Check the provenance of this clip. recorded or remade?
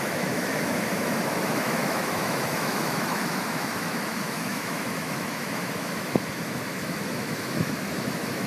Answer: remade